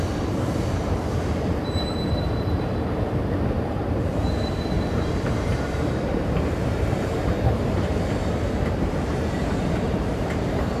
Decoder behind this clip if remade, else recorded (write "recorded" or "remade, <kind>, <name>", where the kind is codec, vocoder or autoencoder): remade, vocoder, BigVGAN v2